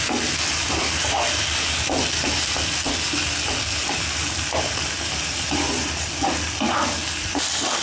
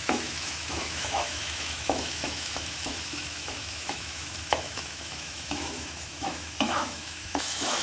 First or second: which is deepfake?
second